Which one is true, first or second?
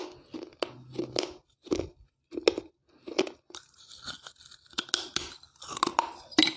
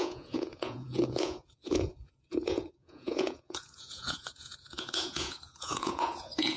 first